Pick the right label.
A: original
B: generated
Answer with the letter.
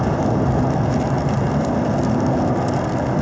A